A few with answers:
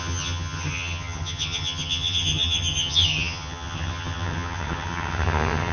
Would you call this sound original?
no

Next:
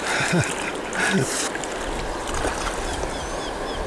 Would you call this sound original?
yes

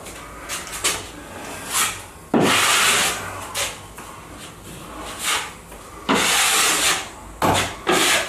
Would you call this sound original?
yes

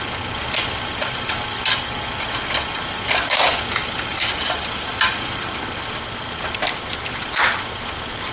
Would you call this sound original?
yes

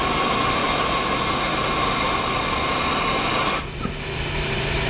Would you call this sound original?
yes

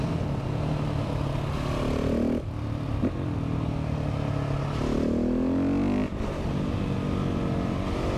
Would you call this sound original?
yes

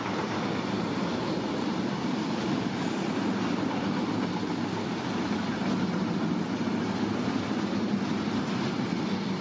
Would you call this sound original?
yes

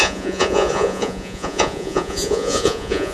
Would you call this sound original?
no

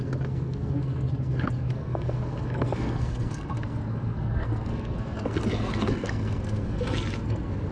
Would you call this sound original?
no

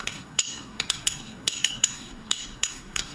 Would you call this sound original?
no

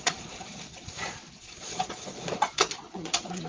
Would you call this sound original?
no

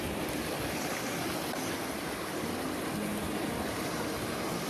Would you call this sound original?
yes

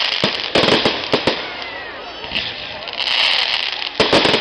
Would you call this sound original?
yes